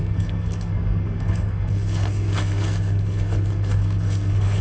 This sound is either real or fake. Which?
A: fake